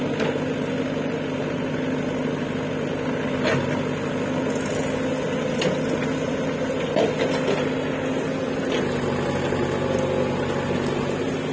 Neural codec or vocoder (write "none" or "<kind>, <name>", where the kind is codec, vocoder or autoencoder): none